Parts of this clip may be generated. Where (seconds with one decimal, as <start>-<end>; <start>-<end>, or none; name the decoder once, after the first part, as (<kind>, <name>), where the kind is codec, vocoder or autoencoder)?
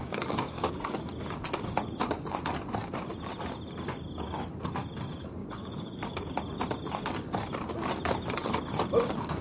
0.0-1.1 (codec, DAC); 5.4-6.3